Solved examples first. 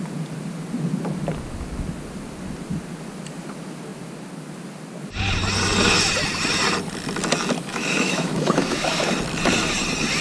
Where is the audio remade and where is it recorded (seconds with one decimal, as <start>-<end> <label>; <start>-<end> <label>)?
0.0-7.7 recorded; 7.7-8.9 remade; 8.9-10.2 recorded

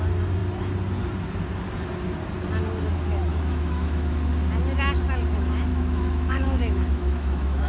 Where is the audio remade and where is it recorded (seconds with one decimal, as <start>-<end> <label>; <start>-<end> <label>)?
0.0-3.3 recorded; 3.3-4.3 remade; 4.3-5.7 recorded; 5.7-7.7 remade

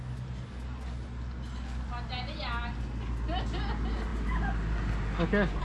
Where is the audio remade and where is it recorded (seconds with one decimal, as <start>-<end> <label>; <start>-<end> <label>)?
0.0-5.6 recorded

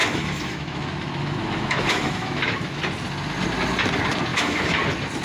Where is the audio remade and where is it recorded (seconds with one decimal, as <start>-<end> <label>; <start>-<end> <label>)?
0.0-2.8 remade; 2.8-4.3 recorded; 4.3-4.8 remade; 4.8-5.2 recorded

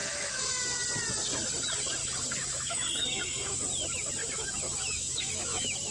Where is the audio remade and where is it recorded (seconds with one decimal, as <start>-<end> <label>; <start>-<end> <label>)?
0.0-0.6 remade; 0.6-2.0 recorded; 2.0-3.6 remade; 3.6-4.2 recorded; 4.2-5.9 remade

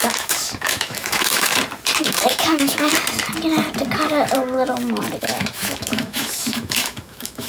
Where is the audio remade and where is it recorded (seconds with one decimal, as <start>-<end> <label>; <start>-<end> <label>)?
0.0-1.5 remade; 1.5-2.0 recorded; 2.0-2.9 remade; 2.9-5.2 recorded; 5.2-7.5 remade